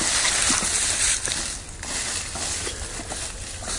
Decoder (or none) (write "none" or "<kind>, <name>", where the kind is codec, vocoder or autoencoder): none